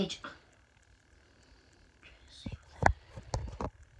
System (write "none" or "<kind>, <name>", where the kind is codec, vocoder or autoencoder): none